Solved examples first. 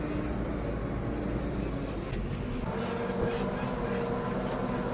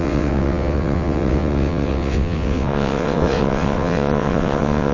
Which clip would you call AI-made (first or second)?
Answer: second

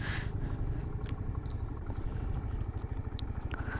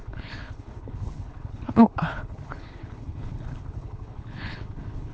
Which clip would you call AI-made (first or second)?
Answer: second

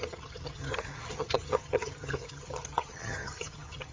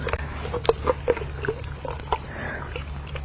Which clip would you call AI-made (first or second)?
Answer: first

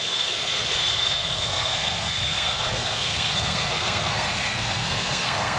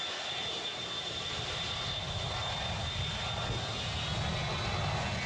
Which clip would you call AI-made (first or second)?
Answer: first